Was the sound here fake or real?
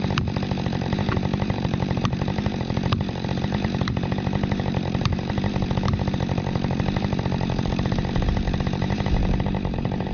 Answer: fake